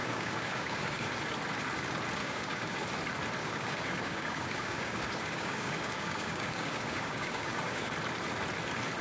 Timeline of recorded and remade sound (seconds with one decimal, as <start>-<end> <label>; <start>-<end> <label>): 0.0-1.1 remade; 1.1-2.2 recorded; 2.2-2.8 remade; 2.8-3.4 recorded; 3.4-7.9 remade; 7.9-9.0 recorded